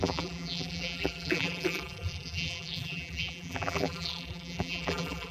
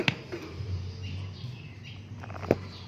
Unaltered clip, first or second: second